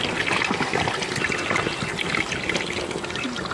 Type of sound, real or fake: real